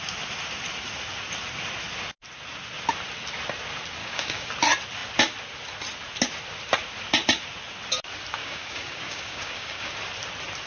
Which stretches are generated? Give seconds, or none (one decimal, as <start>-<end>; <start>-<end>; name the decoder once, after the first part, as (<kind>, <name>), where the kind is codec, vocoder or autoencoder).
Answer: 4.0-4.5 (codec, DAC); 8.4-9.9